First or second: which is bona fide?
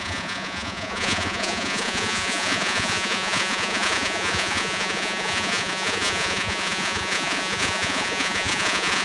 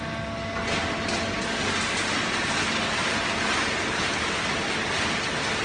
second